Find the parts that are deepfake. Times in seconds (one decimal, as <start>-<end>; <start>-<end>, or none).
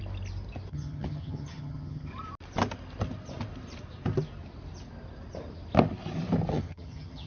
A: 0.7-2.1; 6.5-7.3